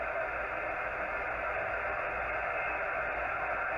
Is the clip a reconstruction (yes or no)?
no